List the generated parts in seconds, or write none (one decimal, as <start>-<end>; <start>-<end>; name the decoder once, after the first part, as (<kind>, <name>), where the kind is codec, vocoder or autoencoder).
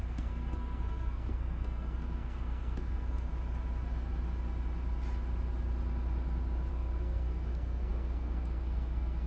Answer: 0.0-3.3 (codec, SNAC); 6.7-9.3